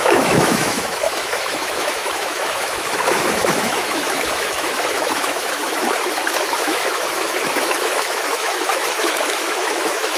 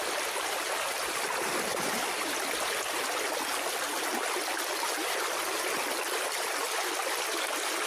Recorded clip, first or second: second